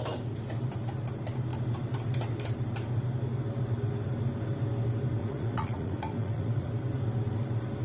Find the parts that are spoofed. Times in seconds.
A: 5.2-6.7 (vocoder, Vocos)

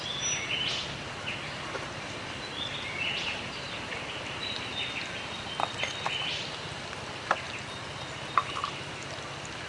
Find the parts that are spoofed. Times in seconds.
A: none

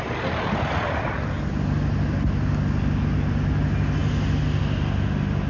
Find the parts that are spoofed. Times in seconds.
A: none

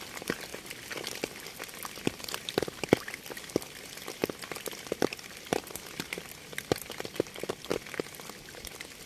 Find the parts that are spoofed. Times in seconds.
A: none